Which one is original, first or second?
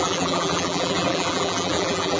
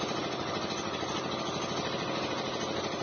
second